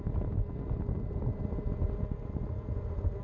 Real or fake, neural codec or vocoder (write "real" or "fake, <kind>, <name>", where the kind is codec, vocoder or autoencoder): real